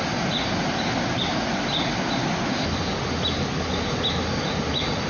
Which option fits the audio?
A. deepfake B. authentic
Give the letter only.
B